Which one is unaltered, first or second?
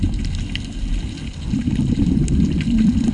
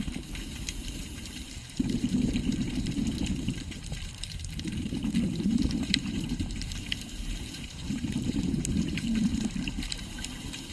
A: first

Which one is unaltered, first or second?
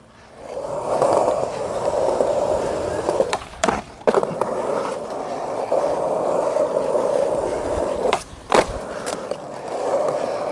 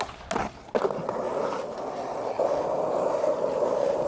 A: second